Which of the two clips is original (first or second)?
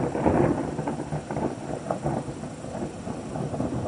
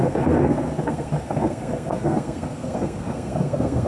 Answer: first